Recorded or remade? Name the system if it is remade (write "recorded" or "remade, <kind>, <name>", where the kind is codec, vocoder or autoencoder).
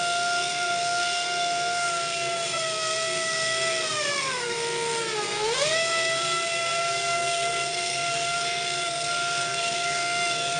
remade, codec, SNAC